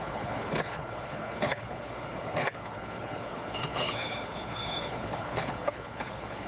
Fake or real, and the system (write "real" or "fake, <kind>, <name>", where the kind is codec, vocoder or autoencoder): fake, codec, HILCodec